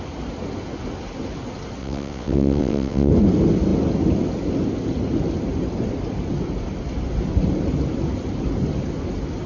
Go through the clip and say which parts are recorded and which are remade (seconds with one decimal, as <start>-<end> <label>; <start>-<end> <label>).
0.0-1.8 recorded; 1.8-3.1 remade; 3.1-9.5 recorded